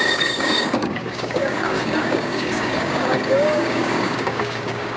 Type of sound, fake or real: fake